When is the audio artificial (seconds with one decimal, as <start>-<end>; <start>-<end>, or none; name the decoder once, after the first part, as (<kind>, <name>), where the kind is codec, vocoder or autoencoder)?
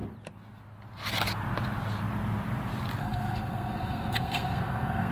3.0-5.1 (codec, SNAC)